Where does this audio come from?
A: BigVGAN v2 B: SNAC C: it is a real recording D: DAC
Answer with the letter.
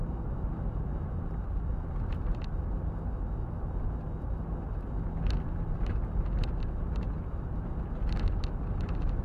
C